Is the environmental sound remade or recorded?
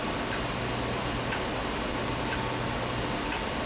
recorded